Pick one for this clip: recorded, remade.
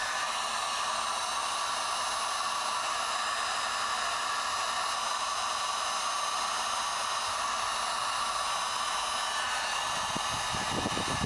recorded